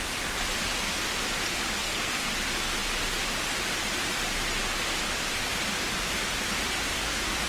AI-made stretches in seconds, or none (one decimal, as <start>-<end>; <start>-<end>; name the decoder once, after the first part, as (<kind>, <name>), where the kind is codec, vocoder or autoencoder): 1.8-2.3 (codec, SNAC)

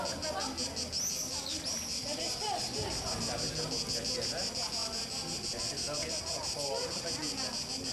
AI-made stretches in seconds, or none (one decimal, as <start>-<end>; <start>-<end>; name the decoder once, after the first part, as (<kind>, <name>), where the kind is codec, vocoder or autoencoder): none

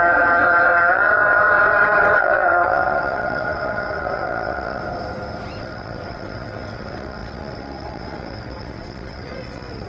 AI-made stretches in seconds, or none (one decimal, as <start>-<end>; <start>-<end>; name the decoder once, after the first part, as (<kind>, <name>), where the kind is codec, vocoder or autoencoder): 0.0-4.8 (vocoder, WaveNeXt); 5.6-9.9

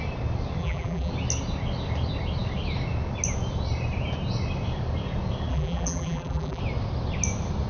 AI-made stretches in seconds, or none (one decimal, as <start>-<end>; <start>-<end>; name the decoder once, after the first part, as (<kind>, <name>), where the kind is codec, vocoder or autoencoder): 0.6-1.1 (vocoder, BigVGAN v2); 5.5-6.6

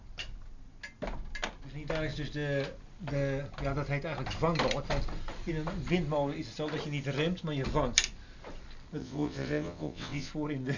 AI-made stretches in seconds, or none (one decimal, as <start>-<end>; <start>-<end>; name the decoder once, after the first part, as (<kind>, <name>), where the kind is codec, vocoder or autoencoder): 9.0-10.3 (vocoder, WaveNeXt)

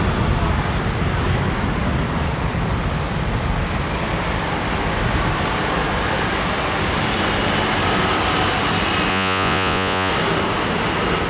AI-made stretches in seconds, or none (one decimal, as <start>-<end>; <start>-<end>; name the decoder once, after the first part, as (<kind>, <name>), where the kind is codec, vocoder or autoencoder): 9.1-10.1 (vocoder, Vocos)

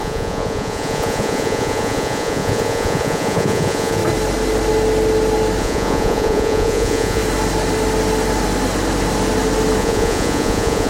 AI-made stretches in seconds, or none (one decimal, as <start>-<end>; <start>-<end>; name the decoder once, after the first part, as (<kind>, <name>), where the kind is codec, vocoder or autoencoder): 0.0-4.0 (vocoder, Vocos); 5.6-7.2; 9.8-10.9